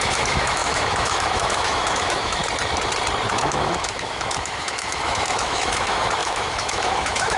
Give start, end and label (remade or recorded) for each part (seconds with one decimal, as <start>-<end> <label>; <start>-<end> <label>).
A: 0.0-2.4 remade; 2.4-3.3 recorded; 3.3-7.4 remade